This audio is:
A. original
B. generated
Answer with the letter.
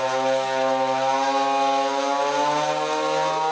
A